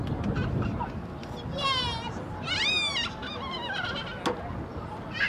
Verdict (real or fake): real